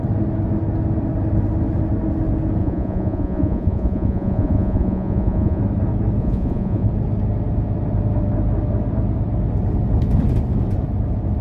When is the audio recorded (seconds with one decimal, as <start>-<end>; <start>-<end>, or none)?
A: 0.0-2.6; 5.6-6.2; 6.9-11.4